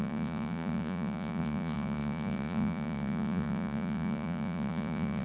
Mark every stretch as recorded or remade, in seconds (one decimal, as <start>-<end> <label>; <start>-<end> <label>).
0.0-5.2 remade